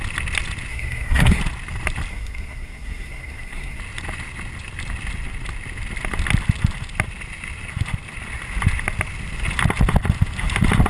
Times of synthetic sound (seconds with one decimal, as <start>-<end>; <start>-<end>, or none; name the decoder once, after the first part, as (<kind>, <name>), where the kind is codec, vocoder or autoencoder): 0.7-1.4 (codec, SNAC); 2.1-3.8

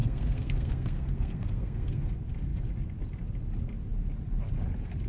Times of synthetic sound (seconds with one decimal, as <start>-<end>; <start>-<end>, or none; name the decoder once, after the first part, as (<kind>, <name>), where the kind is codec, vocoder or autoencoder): 0.0-2.1 (codec, SNAC)

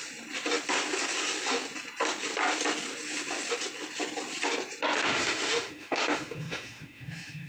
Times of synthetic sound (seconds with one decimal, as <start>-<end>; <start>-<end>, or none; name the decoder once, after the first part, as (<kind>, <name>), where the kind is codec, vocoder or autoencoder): 5.0-7.5 (autoencoder, DAC-VAE)

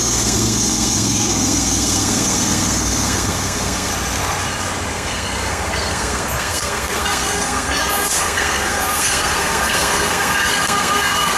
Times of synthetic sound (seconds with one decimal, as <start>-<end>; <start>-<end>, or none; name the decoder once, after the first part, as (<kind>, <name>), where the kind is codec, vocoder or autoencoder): 0.0-3.9 (codec, SNAC); 4.9-11.4

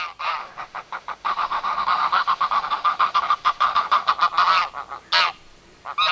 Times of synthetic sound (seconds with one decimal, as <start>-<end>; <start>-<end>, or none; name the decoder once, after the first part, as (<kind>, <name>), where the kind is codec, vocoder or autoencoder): 0.4-4.1 (autoencoder, DAC-VAE)

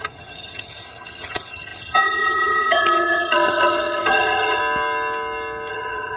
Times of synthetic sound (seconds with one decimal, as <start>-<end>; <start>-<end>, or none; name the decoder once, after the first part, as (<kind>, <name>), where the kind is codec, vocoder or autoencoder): 0.0-4.6 (vocoder, HiFi-GAN); 5.7-6.2

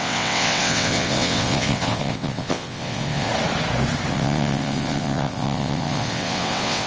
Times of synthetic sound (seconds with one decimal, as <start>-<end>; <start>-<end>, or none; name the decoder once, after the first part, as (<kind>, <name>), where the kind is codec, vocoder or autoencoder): 0.0-3.3 (vocoder, WaveNeXt); 4.1-6.9